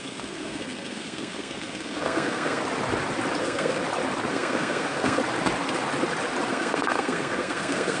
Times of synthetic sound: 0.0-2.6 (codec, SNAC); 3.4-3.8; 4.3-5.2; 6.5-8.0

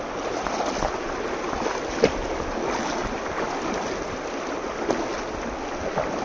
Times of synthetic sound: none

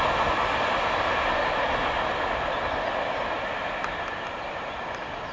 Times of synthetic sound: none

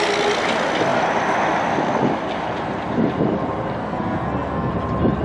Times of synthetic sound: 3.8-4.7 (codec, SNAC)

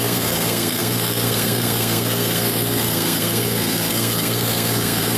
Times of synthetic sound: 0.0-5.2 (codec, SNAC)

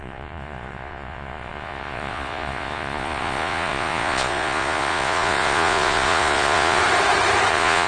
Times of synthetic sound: 0.0-6.8 (vocoder, Vocos); 7.5-7.9